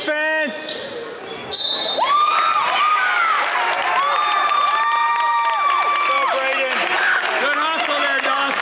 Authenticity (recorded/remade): recorded